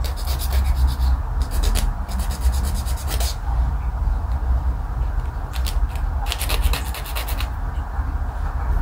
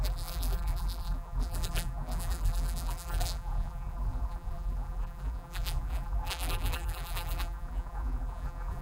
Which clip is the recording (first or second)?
first